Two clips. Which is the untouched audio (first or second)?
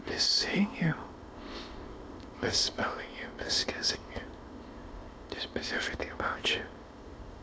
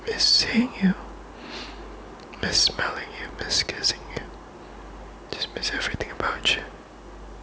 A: second